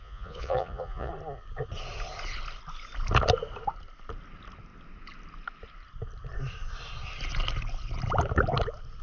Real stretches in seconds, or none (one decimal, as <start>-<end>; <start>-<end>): 1.1-9.0